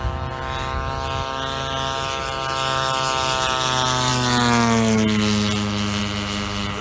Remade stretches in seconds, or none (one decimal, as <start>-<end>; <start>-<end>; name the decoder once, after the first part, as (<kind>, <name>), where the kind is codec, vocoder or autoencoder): none